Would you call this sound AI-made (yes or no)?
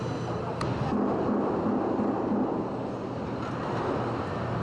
no